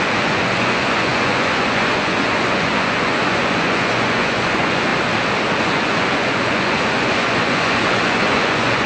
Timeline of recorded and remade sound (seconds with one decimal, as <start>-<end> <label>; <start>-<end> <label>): 0.0-4.9 remade; 4.9-5.6 recorded; 5.6-8.9 remade

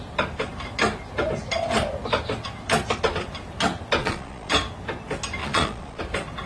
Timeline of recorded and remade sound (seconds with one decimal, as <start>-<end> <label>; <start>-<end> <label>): 0.0-4.0 recorded; 4.0-4.5 remade; 4.5-5.4 recorded; 5.4-6.0 remade; 6.0-6.5 recorded

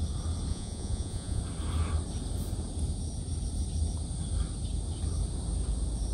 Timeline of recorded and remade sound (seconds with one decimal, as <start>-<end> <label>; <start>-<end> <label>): 0.0-0.5 recorded; 0.5-1.4 remade; 1.4-6.1 recorded

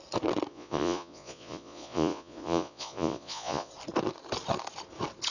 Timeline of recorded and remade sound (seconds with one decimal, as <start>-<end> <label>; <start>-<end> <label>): 0.0-0.5 recorded; 0.5-3.7 remade; 3.7-5.3 recorded

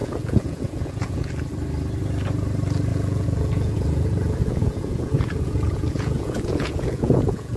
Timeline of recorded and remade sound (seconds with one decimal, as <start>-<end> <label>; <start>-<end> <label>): 0.0-1.3 remade; 1.3-2.9 recorded; 2.9-7.6 remade

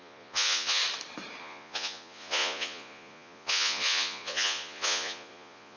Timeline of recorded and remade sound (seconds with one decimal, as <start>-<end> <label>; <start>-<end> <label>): 0.0-0.8 remade; 0.8-1.4 recorded; 1.4-5.8 remade

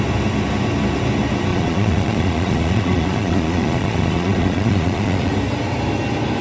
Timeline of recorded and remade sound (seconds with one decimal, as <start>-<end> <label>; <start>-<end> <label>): 0.0-1.5 recorded; 1.5-5.3 remade; 5.3-6.4 recorded